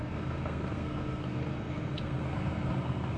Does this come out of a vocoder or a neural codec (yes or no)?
yes